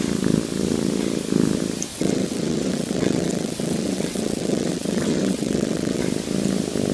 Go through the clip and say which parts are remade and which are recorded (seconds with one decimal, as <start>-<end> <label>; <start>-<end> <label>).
0.0-1.9 recorded; 1.9-6.0 remade; 6.0-6.9 recorded